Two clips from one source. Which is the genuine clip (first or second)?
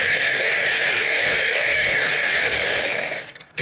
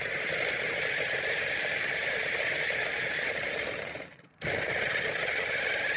second